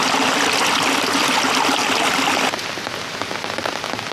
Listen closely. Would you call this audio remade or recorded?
recorded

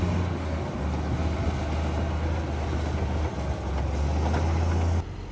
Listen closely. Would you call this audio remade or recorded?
recorded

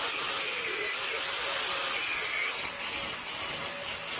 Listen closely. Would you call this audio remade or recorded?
recorded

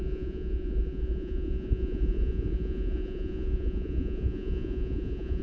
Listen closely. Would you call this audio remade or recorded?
remade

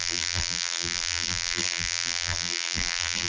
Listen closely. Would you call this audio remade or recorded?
remade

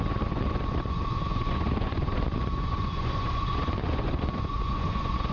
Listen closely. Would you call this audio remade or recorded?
remade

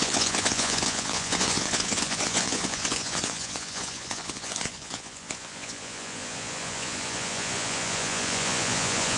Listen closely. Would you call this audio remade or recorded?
remade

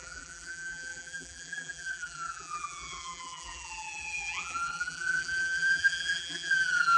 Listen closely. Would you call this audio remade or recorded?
remade